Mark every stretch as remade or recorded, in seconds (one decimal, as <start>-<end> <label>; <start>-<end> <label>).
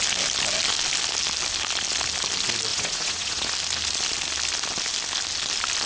0.0-2.7 recorded; 2.7-3.5 remade; 3.5-5.9 recorded